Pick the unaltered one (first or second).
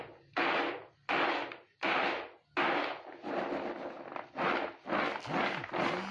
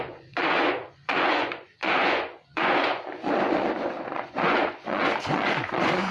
first